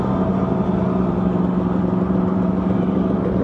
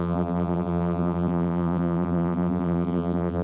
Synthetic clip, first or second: second